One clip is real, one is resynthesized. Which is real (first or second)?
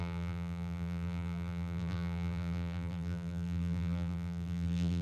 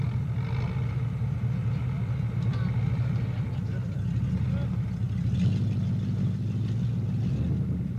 second